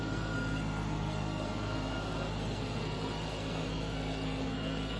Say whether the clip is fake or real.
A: fake